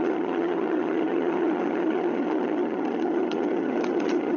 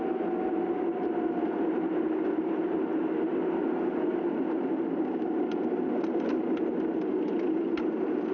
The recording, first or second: second